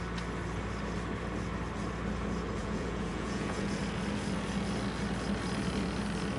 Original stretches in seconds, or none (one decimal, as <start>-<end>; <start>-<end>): 0.0-2.6; 3.8-6.4